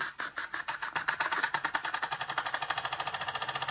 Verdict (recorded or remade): recorded